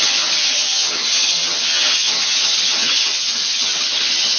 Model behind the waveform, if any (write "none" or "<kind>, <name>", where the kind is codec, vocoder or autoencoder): vocoder, HiFi-GAN